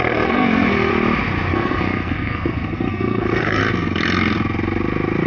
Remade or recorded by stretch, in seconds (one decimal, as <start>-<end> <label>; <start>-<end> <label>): 0.0-0.9 remade; 0.9-1.5 recorded; 1.5-3.6 remade; 3.6-5.3 recorded